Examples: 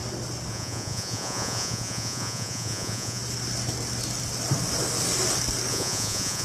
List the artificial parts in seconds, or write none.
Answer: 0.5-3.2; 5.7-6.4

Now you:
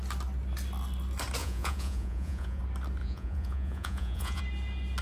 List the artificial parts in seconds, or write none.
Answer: 1.4-2.6; 3.0-4.4

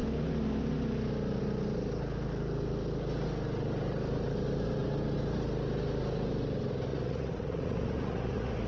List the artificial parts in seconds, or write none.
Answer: 6.9-8.7

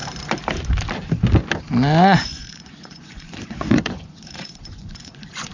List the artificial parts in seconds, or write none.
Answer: 2.2-5.5